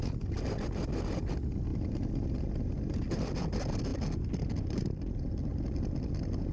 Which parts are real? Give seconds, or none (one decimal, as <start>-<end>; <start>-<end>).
0.0-6.5